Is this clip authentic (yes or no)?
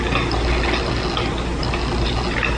yes